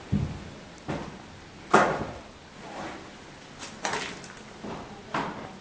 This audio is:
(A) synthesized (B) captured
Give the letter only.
B